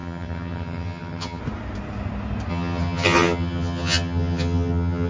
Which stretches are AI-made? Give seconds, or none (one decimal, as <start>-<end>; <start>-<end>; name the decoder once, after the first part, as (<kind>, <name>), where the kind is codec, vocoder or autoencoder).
0.0-1.4 (vocoder, HiFi-GAN); 2.5-5.1